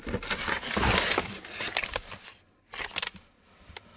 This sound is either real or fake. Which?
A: real